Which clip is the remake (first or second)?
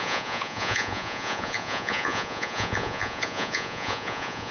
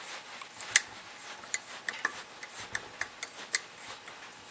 first